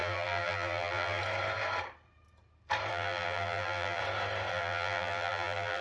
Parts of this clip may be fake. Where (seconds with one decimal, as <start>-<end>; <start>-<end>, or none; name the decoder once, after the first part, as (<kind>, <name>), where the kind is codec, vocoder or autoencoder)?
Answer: 0.0-1.2 (vocoder, BigVGAN v2); 2.9-4.0; 4.5-5.8